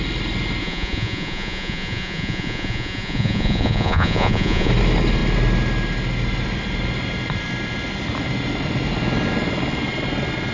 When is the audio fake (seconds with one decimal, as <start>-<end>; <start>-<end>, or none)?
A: 0.6-4.7